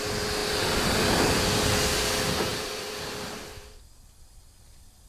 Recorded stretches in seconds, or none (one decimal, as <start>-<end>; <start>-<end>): 0.0-2.5

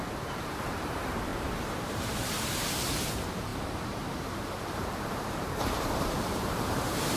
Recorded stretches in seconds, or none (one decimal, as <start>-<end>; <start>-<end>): none

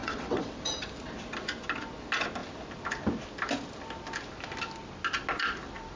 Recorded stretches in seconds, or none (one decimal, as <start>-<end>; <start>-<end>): 0.6-6.0

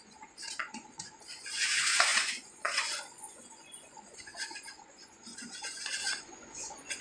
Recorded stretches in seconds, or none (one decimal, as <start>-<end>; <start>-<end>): none

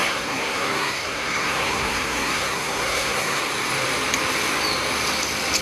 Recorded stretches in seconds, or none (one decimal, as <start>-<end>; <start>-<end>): 3.4-5.6

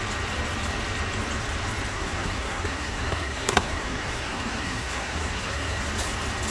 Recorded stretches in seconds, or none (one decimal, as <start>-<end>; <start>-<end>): 0.0-1.9; 5.8-6.5

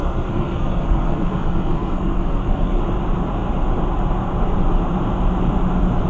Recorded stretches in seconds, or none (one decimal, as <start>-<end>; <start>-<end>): 2.8-6.1